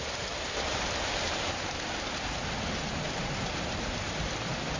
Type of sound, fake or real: fake